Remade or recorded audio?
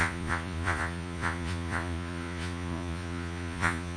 remade